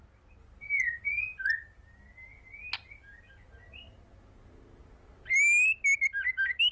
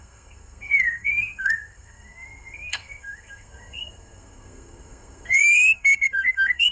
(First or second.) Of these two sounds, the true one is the first